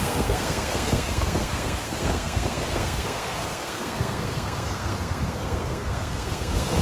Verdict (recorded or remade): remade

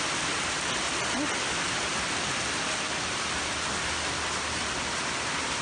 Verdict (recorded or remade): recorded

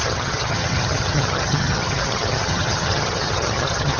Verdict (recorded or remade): remade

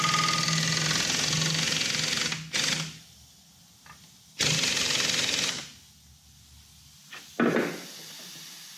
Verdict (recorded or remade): recorded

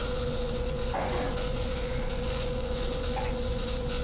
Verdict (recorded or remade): remade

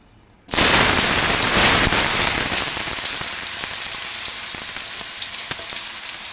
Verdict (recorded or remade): remade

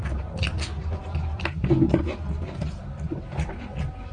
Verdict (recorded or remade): recorded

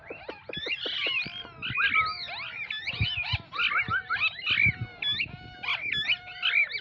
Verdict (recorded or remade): recorded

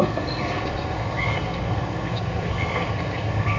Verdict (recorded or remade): remade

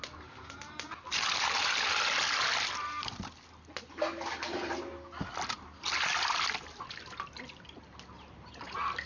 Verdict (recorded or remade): recorded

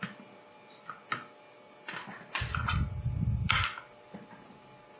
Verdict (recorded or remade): recorded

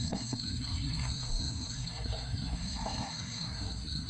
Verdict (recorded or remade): remade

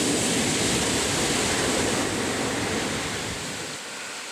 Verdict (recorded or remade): recorded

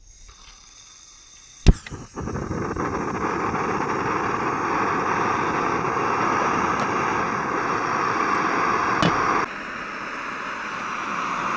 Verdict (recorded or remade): recorded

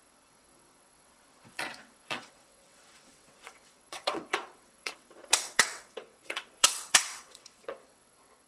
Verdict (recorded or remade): remade